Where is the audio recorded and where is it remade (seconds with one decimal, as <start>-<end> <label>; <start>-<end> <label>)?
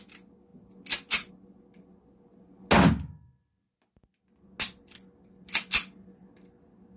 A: 0.0-7.0 recorded